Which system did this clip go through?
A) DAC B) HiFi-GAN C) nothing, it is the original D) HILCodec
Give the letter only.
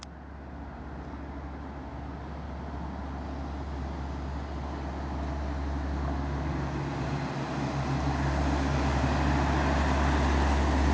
C